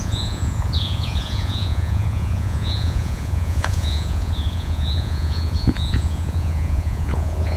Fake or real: fake